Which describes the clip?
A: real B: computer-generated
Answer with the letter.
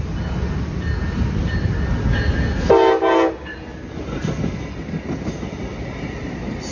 A